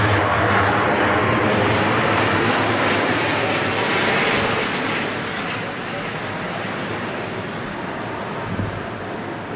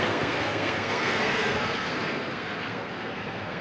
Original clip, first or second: first